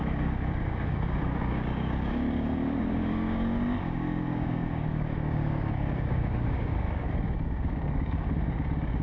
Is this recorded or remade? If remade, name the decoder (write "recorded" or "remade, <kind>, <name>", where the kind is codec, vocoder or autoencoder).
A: remade, codec, DAC